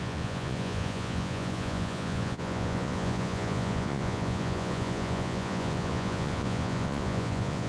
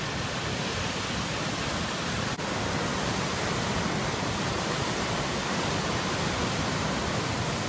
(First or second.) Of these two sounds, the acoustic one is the second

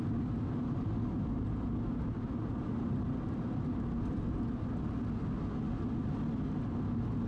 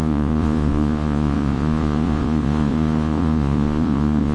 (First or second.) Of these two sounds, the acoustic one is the first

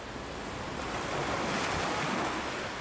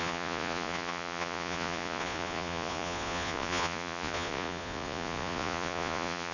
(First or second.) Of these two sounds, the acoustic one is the first